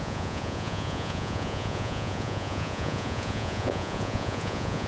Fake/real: fake